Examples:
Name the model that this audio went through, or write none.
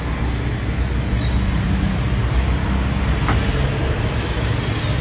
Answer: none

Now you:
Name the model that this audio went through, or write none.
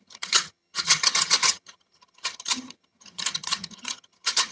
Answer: vocoder, HiFi-GAN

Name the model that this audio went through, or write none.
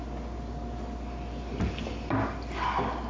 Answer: none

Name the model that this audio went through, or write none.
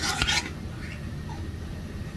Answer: none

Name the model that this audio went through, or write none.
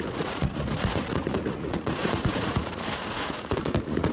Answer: vocoder, Vocos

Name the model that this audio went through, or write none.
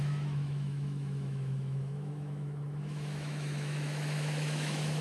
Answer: autoencoder, DAC-VAE